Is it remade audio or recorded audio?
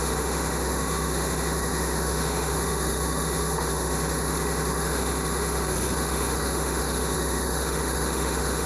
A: remade